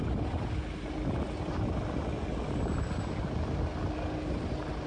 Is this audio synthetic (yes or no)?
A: no